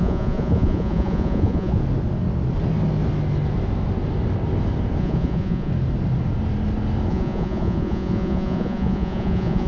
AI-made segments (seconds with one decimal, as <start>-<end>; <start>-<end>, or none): 0.0-1.8; 5.0-5.7; 7.1-9.7